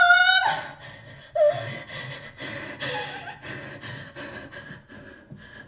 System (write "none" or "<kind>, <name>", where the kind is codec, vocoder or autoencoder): none